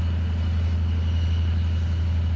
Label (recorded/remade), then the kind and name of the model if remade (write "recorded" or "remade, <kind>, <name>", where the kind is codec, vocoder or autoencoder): recorded